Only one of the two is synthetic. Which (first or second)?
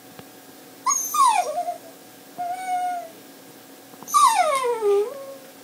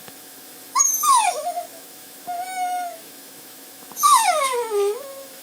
second